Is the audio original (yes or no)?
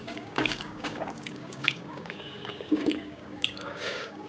no